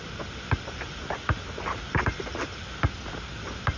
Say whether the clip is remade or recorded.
recorded